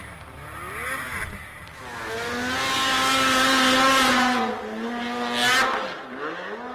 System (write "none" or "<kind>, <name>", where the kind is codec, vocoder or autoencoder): none